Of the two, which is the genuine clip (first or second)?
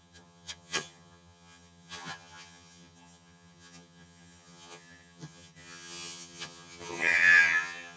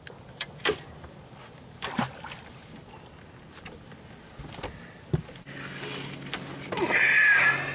second